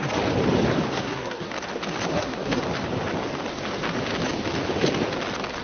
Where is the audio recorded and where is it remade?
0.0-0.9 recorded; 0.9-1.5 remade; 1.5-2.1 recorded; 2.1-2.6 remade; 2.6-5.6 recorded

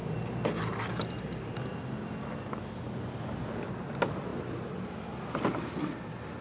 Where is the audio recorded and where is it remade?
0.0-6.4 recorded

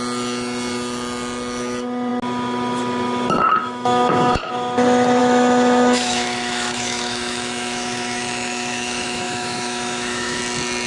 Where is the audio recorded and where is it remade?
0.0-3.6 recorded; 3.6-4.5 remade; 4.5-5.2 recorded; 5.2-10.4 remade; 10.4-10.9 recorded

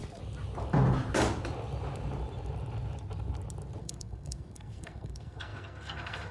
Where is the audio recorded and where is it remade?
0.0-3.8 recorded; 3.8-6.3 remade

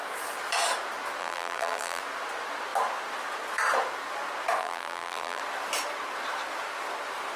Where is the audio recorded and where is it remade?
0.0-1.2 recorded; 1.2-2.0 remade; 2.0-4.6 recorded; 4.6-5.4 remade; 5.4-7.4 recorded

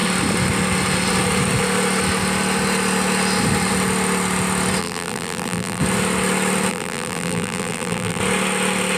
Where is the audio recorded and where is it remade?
0.0-4.8 recorded; 4.8-5.8 remade; 5.8-6.7 recorded; 6.7-8.2 remade; 8.2-9.0 recorded